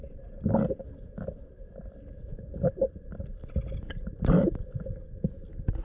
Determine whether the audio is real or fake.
real